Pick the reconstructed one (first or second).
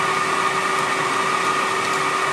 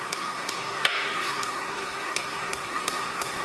second